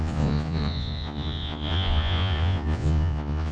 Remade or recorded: remade